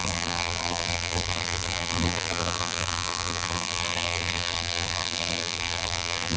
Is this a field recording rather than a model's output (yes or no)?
no